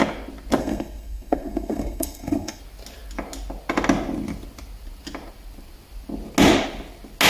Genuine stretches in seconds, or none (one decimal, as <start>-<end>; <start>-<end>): 0.0-0.6; 2.6-7.3